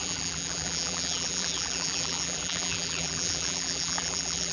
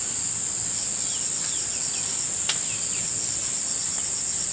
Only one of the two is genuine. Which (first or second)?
second